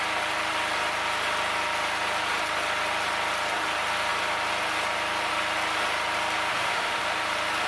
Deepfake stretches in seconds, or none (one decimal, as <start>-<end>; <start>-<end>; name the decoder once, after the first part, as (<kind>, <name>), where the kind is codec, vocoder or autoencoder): 6.5-7.0 (autoencoder, DAC-VAE)